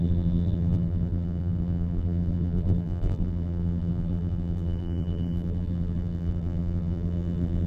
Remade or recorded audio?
remade